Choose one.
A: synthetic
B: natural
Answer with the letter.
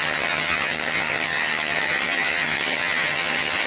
A